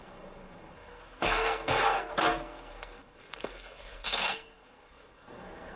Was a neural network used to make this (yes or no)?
yes